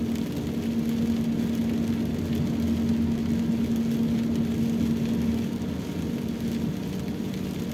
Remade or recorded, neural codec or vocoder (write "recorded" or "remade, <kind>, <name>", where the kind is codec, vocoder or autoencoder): recorded